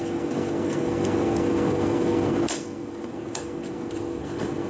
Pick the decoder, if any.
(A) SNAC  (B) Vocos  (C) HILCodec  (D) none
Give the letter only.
A